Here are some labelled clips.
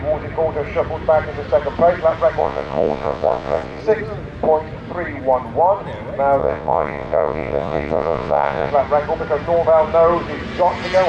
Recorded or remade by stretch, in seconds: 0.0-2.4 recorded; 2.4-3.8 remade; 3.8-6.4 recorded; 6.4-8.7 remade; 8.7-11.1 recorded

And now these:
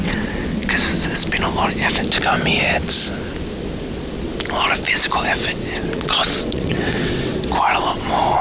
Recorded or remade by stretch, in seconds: 0.0-0.6 remade; 0.6-5.3 recorded; 5.3-7.3 remade; 7.3-7.8 recorded; 7.8-8.4 remade

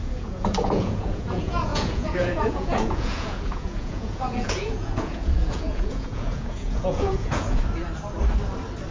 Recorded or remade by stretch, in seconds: 0.0-7.6 remade; 7.6-8.9 recorded

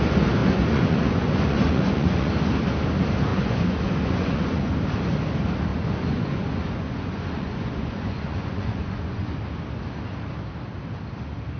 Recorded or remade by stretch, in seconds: 0.0-0.4 recorded; 0.4-2.3 remade; 2.3-3.3 recorded; 3.3-4.7 remade; 4.7-5.7 recorded; 5.7-9.3 remade; 9.3-11.6 recorded

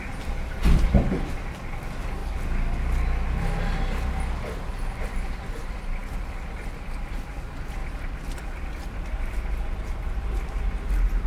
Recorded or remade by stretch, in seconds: 0.0-11.3 recorded